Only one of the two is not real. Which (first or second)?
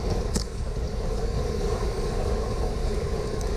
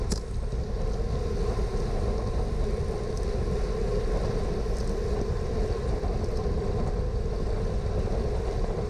first